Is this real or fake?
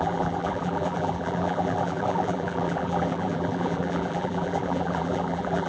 fake